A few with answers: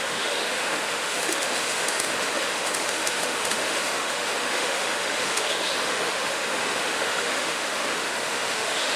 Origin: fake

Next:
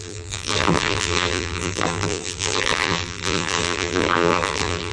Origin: fake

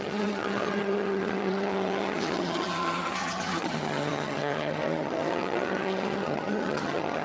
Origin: fake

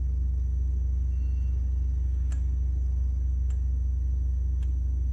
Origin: real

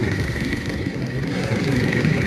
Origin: fake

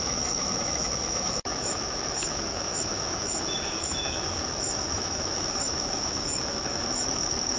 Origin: fake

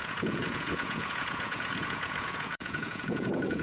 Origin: fake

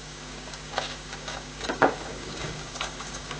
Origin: fake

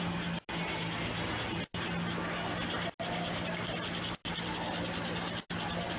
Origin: real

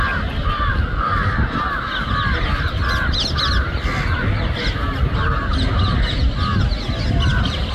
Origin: real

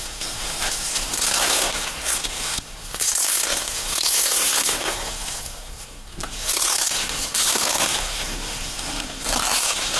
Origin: fake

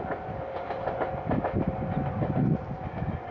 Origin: real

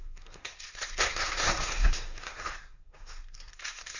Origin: fake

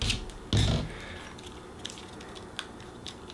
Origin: real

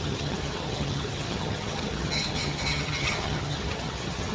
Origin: fake